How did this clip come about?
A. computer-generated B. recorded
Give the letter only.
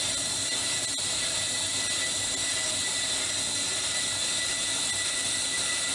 B